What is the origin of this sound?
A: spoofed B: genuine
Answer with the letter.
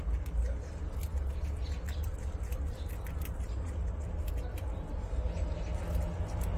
B